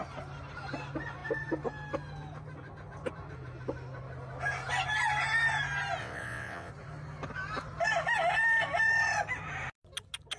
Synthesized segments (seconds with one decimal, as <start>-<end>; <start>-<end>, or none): 6.0-6.7